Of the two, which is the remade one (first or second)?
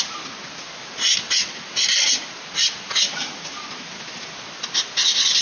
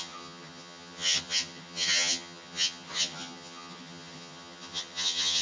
second